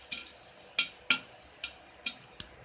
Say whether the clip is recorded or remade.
recorded